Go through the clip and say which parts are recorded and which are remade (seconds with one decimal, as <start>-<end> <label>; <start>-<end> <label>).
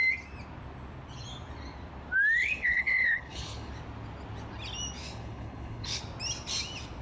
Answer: 0.0-2.4 recorded; 2.4-3.7 remade; 3.7-5.0 recorded; 5.0-6.0 remade; 6.0-7.0 recorded